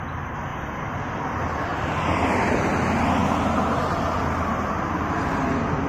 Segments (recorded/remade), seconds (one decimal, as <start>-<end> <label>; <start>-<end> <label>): 0.0-5.9 recorded